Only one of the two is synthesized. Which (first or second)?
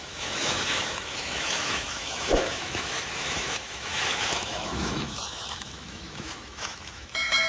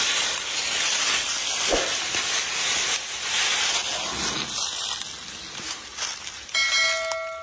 first